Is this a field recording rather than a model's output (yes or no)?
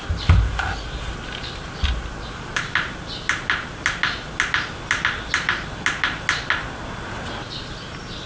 yes